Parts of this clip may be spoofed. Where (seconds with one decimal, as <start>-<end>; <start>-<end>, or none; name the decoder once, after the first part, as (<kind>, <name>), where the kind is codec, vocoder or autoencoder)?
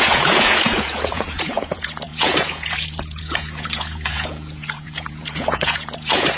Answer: 0.0-6.4 (vocoder, Vocos)